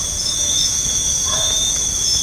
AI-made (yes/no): yes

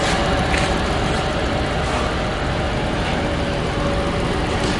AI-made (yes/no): no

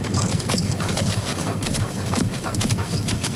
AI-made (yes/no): yes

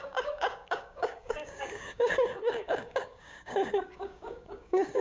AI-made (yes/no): yes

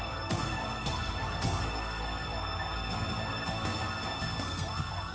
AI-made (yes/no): yes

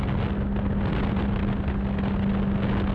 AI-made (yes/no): no